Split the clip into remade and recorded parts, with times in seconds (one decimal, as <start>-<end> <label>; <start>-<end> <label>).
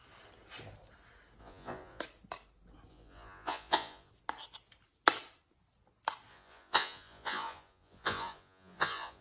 0.0-1.4 recorded; 1.4-2.0 remade; 2.0-2.9 recorded; 2.9-4.1 remade; 4.1-6.3 recorded; 6.3-9.2 remade